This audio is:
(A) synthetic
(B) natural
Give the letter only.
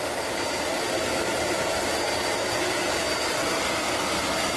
B